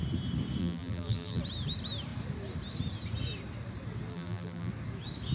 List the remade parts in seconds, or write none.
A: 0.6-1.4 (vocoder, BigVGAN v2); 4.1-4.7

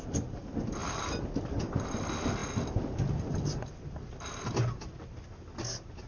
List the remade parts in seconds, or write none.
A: none

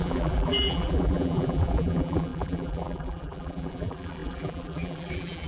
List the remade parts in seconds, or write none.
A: 0.0-5.5 (vocoder, BigVGAN v2)

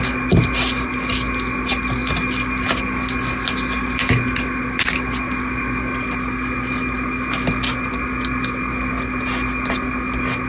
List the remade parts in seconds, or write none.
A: none

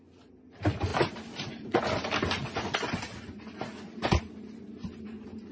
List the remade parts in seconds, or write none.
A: 0.9-4.2 (vocoder, BigVGAN v2)

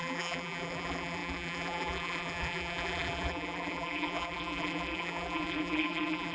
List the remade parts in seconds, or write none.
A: 0.0-6.3 (vocoder, BigVGAN v2)

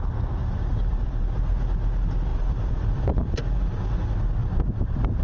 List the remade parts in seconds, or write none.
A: 0.4-1.2 (vocoder, BigVGAN v2); 2.3-3.2; 4.4-5.2

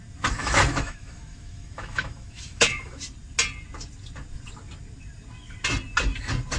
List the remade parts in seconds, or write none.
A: 0.4-3.0 (autoencoder, DAC-VAE)